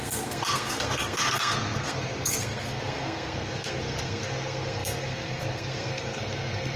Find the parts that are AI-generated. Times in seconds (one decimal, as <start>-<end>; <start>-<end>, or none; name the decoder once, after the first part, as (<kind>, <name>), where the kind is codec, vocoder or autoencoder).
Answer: 0.0-6.8 (codec, SNAC)